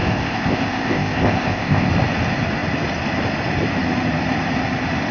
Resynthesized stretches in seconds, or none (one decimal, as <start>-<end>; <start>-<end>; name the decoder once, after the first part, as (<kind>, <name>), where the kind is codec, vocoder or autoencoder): 0.0-1.9 (codec, ZipCodec)